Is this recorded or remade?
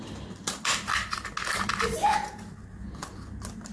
recorded